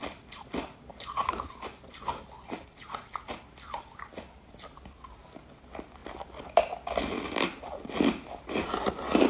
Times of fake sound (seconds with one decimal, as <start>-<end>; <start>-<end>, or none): none

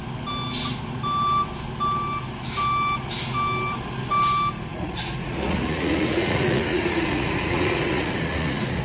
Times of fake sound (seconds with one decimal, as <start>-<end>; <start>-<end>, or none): 4.7-8.8

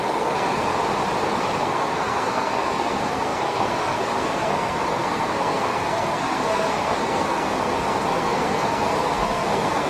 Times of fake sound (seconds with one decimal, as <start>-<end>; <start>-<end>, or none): 0.0-0.7; 1.3-9.9

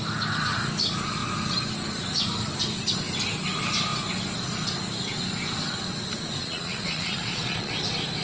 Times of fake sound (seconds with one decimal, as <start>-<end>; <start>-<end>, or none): 6.4-7.7

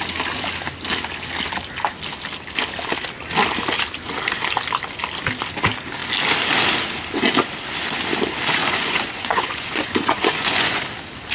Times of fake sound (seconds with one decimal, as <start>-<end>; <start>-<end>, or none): 8.6-10.8

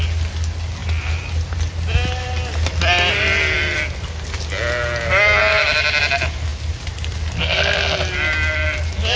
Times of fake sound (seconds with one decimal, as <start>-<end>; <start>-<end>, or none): none